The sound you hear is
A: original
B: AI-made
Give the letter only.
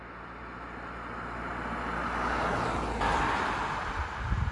A